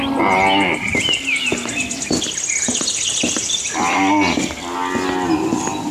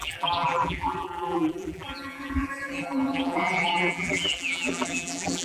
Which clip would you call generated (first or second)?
second